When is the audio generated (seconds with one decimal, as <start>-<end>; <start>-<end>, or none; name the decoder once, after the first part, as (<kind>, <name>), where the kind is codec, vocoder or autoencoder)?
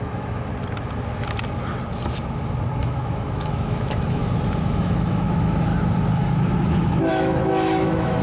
0.0-0.5 (autoencoder, DAC-VAE); 2.8-4.2; 4.7-5.7; 7.1-8.2